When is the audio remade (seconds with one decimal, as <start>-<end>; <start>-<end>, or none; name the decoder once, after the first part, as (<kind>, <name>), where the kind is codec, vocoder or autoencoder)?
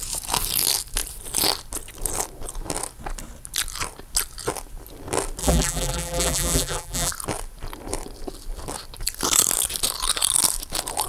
5.4-7.1 (vocoder, BigVGAN v2)